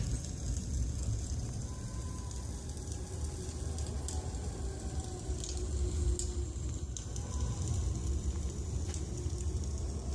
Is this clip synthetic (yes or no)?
no